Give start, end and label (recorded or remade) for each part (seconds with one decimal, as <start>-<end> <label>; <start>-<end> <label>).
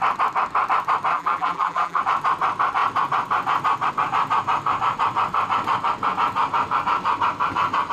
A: 0.0-1.1 recorded; 1.1-2.0 remade; 2.0-7.9 recorded